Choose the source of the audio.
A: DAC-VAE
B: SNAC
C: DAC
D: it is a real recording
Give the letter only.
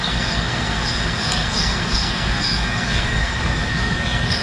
B